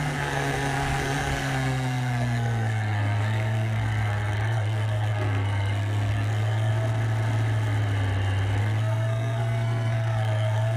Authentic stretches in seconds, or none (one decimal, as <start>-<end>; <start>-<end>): 6.7-8.6